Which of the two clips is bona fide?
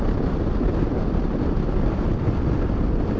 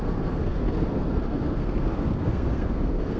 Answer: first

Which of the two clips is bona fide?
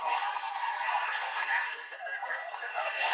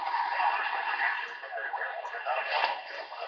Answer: second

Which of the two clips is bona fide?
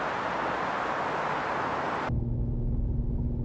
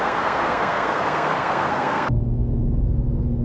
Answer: first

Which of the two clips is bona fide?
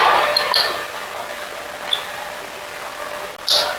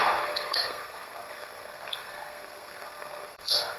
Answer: first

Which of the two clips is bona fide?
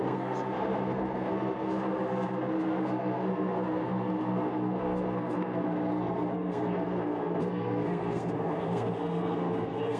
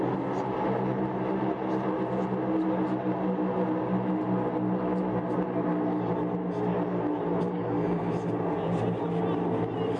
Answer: second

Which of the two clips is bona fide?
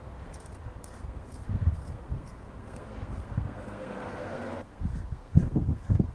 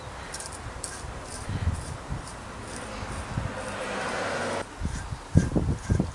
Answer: second